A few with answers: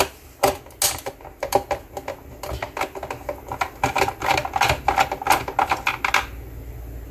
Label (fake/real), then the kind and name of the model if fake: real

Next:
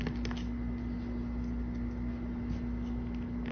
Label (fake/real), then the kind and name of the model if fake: real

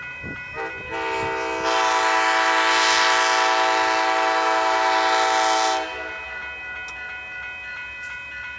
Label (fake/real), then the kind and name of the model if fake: real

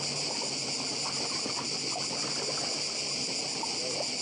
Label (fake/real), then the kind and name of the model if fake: real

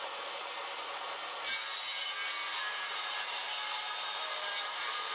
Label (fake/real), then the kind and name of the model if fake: real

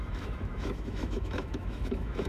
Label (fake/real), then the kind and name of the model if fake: fake, autoencoder, DAC-VAE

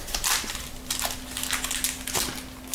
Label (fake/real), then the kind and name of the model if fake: real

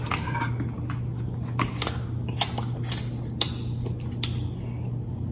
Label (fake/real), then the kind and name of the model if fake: real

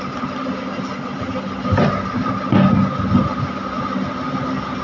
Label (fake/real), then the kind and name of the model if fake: real